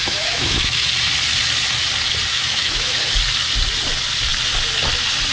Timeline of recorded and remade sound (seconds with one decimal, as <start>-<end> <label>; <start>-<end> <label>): 0.0-0.9 remade; 0.9-2.3 recorded; 2.3-3.1 remade; 3.1-5.3 recorded

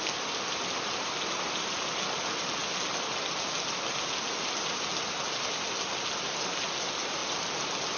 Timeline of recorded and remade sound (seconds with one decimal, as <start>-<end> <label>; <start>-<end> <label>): 0.0-8.0 recorded

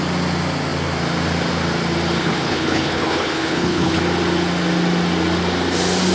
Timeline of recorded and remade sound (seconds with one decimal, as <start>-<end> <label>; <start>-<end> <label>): 0.0-2.2 recorded; 2.2-4.0 remade; 4.0-6.1 recorded

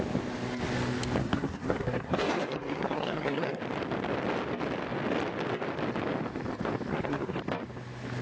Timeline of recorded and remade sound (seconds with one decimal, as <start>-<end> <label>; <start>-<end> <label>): 0.0-1.2 recorded; 1.2-3.6 remade; 3.6-6.9 recorded; 6.9-7.4 remade; 7.4-8.2 recorded